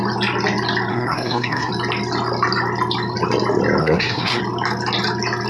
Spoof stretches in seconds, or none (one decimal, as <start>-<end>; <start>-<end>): 0.9-1.7; 3.8-4.4